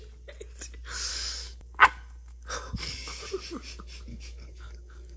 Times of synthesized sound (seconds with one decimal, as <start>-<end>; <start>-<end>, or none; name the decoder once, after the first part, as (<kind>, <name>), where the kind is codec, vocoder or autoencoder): 1.1-3.3 (codec, DAC); 4.1-5.2